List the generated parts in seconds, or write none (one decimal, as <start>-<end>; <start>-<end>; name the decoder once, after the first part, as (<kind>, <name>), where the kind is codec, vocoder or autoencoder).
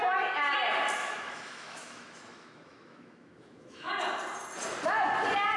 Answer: 1.0-3.9 (autoencoder, DAC-VAE)